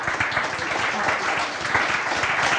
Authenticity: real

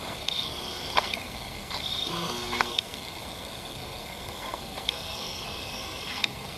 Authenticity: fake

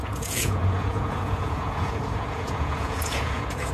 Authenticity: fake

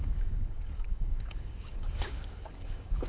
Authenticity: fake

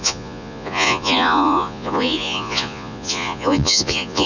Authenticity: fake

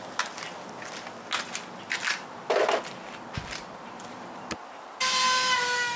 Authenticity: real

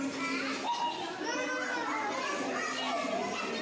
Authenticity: real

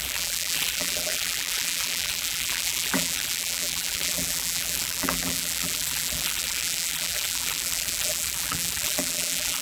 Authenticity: fake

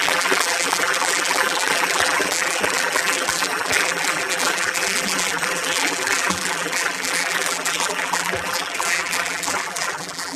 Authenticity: fake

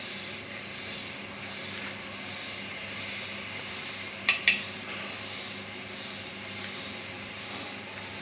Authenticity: fake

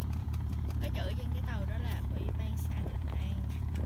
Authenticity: fake